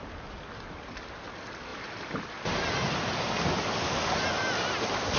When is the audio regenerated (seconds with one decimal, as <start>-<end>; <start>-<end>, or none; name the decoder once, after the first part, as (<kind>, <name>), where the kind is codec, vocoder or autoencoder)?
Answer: 1.7-3.4 (vocoder, BigVGAN v2)